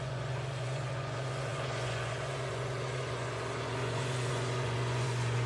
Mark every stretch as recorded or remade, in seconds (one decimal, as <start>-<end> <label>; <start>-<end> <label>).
0.0-5.5 remade